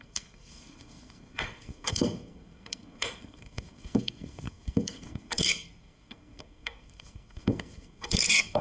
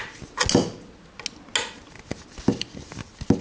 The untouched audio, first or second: second